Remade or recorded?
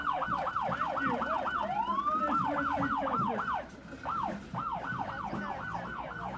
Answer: recorded